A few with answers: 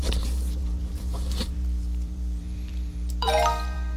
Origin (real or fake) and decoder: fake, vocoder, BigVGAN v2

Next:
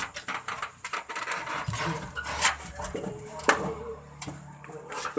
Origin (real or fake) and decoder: fake, vocoder, BigVGAN v2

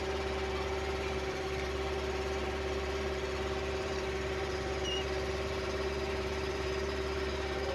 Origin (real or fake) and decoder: fake, vocoder, BigVGAN v2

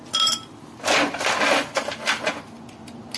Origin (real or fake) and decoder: real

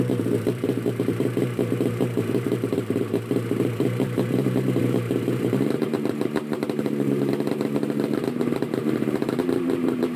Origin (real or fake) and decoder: fake, vocoder, BigVGAN v2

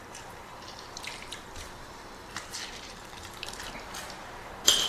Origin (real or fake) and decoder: fake, vocoder, BigVGAN v2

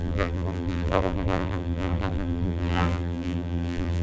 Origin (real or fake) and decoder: fake, vocoder, BigVGAN v2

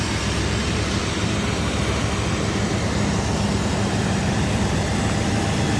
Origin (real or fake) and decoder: real